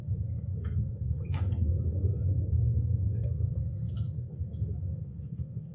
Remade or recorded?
remade